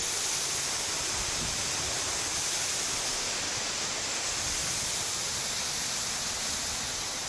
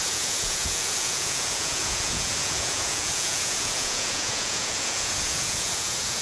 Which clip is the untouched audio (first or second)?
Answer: first